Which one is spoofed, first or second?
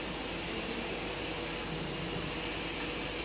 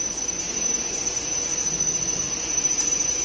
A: second